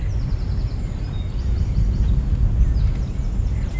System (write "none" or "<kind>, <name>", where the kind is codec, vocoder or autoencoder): none